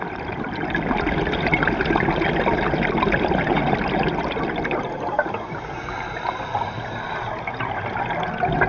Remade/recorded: recorded